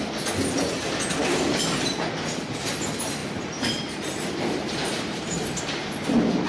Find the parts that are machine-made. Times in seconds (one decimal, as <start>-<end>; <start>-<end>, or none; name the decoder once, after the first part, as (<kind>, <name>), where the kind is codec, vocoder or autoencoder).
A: 1.2-2.0 (vocoder, BigVGAN v2); 3.2-5.6

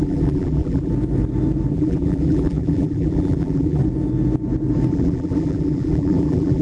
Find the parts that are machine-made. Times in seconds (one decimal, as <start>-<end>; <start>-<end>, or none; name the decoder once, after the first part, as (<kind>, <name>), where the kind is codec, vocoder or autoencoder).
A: 0.0-0.9 (vocoder, BigVGAN v2); 1.7-3.8; 4.9-6.6

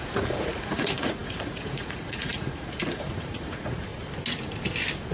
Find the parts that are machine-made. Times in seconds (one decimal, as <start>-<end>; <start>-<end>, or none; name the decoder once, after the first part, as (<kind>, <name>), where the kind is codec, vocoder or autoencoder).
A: 0.0-3.9 (vocoder, Vocos)

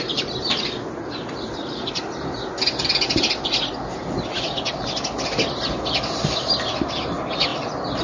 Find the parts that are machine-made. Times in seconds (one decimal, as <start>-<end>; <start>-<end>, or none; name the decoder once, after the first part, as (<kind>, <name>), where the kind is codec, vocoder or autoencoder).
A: none

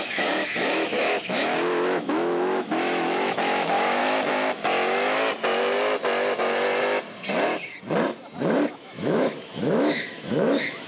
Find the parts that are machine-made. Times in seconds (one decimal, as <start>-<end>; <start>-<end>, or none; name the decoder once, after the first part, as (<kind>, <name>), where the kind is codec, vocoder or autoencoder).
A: 0.0-4.0 (autoencoder, DAC-VAE); 8.7-10.9

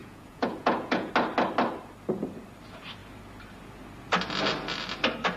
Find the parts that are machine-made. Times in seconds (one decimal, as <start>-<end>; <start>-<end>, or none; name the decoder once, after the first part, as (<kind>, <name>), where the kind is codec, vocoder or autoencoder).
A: 0.0-1.1 (vocoder, Vocos)